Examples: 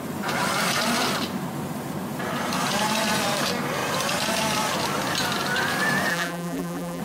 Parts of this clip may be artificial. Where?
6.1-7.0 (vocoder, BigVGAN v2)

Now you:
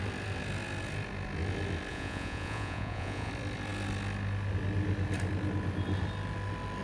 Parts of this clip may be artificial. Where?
1.9-3.3 (vocoder, Vocos)

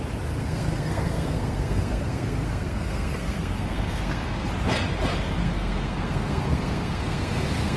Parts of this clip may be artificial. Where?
0.4-4.5 (codec, SNAC); 5.4-7.8

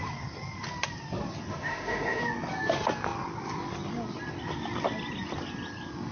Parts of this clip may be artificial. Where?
1.5-2.2 (autoencoder, DAC-VAE)

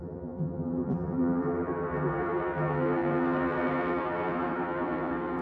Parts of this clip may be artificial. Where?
0.0-5.4 (vocoder, BigVGAN v2)

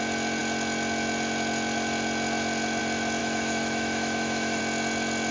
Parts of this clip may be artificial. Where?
3.2-4.6 (autoencoder, DAC-VAE)

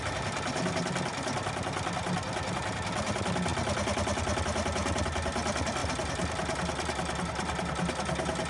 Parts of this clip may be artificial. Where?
none

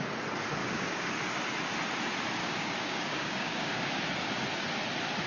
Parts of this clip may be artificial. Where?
0.6-1.1 (codec, DAC); 2.4-4.1